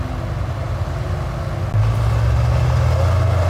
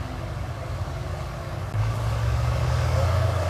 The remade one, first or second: second